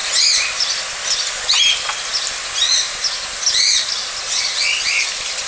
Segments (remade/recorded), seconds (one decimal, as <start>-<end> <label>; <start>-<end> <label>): 0.0-5.5 recorded